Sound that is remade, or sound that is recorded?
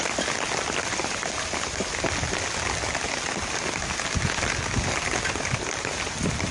recorded